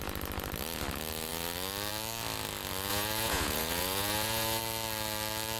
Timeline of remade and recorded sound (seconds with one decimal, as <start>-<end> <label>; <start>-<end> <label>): 0.0-2.9 recorded; 2.9-4.6 remade; 4.6-5.6 recorded